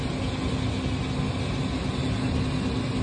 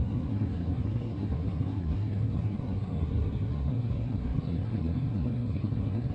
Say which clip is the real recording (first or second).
first